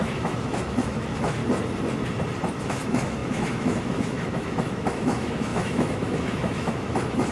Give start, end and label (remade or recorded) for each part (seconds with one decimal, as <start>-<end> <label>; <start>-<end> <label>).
0.0-1.4 remade; 1.4-2.6 recorded; 2.6-7.3 remade